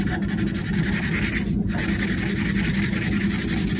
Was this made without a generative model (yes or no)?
yes